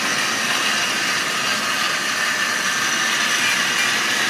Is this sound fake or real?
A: real